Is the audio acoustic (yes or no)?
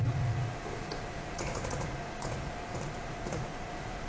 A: no